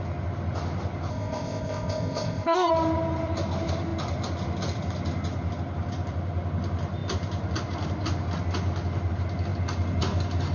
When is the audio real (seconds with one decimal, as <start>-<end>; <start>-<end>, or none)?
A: 0.0-1.1; 2.7-10.5